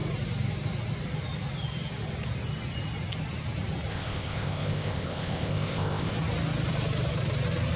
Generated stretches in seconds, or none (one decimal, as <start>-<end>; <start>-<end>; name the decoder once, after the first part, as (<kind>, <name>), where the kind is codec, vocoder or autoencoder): 3.9-6.1 (codec, ZipCodec)